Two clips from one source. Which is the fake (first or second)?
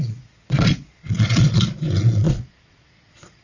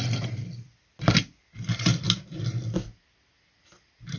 first